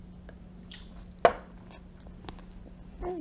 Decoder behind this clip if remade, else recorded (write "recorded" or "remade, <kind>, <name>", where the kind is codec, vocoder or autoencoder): recorded